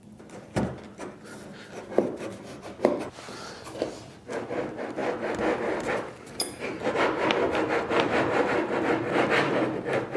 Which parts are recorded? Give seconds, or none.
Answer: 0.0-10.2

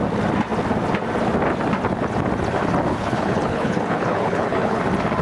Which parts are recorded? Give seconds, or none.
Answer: 0.0-2.9; 4.8-5.2

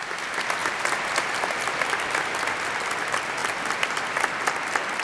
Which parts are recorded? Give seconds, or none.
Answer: 0.0-5.0